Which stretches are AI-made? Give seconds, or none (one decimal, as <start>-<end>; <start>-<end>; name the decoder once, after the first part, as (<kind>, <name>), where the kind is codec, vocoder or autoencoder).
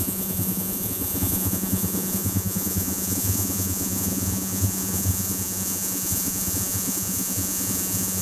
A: 0.0-8.2 (vocoder, Vocos)